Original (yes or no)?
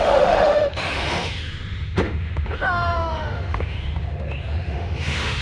no